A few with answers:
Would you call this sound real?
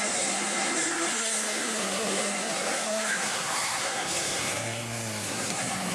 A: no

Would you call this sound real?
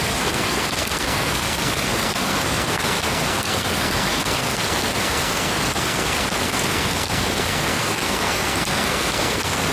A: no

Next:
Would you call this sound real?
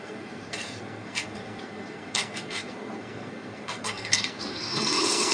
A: no